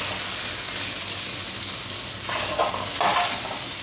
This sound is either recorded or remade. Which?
recorded